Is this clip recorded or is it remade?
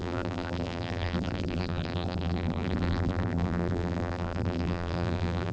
remade